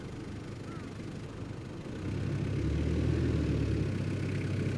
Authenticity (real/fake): real